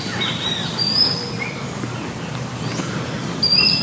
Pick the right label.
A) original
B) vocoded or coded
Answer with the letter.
B